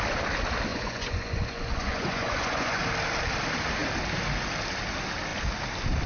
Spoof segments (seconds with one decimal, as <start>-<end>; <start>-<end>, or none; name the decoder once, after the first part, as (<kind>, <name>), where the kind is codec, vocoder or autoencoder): 0.7-2.8 (vocoder, Vocos)